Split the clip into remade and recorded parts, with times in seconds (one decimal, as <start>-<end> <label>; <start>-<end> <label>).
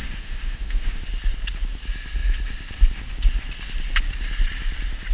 0.0-1.0 remade; 1.0-5.1 recorded